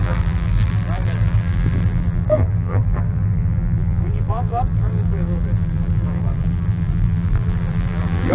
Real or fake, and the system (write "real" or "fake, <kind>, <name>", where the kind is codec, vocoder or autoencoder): fake, vocoder, BigVGAN v2